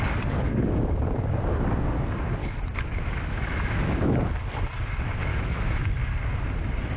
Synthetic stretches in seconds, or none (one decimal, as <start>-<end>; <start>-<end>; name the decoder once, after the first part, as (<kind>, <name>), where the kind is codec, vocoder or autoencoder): 2.4-4.2 (autoencoder, DAC-VAE); 5.3-5.8

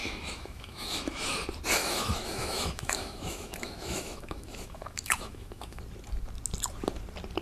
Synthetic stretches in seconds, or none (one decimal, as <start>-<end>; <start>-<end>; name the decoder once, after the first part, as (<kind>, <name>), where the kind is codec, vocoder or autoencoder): 0.0-1.4 (autoencoder, DAC-VAE); 1.8-5.8

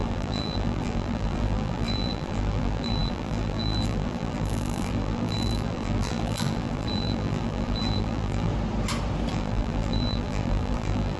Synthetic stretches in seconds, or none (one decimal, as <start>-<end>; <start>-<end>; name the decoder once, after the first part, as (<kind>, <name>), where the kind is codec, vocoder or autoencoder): 0.0-8.5 (vocoder, BigVGAN v2); 9.3-11.2